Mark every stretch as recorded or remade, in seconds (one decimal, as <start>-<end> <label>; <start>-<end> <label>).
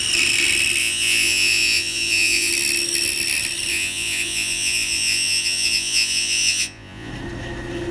0.0-0.8 recorded; 0.8-2.5 remade; 2.5-3.7 recorded; 3.7-7.1 remade; 7.1-7.9 recorded